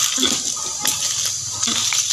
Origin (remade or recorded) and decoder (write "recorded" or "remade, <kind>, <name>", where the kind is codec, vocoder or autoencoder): recorded